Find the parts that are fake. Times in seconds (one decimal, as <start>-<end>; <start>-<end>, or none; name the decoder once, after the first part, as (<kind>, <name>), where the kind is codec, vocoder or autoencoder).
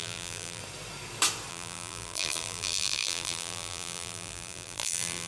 0.0-0.6 (vocoder, BigVGAN v2); 1.5-5.3